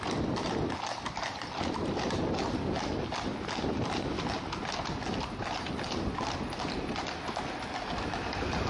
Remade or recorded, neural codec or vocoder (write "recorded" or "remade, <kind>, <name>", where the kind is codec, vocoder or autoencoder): recorded